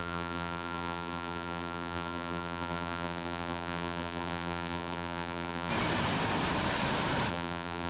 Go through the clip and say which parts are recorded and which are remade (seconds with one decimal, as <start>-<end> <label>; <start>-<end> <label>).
0.0-5.7 remade; 5.7-7.3 recorded; 7.3-7.9 remade